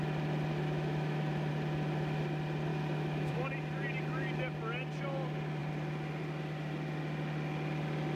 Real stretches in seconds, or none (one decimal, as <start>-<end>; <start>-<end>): 0.0-0.5; 1.5-2.7; 3.3-8.2